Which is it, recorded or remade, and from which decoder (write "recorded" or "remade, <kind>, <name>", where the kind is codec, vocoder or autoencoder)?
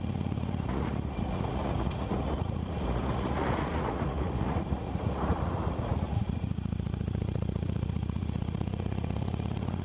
remade, vocoder, Vocos